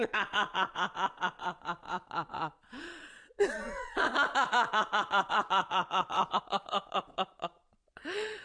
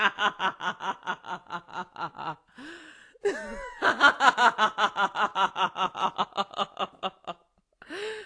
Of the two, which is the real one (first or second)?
second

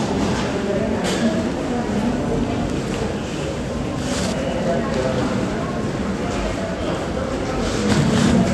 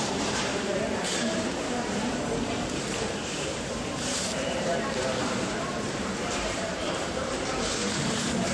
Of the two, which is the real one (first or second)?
first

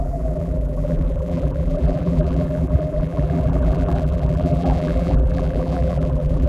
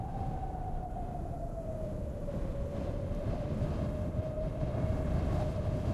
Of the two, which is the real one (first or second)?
second